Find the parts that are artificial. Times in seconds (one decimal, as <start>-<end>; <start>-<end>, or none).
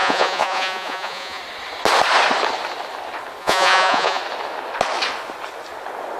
0.0-1.4; 3.4-4.2